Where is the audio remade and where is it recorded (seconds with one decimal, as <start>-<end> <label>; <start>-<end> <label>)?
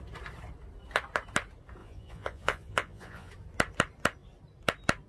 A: 0.0-1.8 recorded; 1.8-3.3 remade; 3.3-5.1 recorded